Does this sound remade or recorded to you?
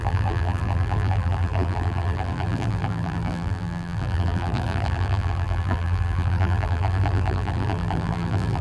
remade